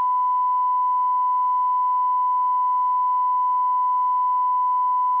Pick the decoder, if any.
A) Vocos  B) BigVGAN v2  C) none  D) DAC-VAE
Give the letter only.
C